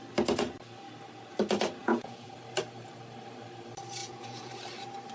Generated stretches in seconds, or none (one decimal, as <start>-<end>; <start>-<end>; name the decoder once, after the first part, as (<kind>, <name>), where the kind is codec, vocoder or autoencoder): 1.8-2.3 (vocoder, Vocos); 4.0-4.5